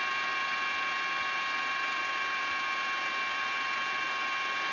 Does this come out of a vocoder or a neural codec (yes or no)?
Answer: yes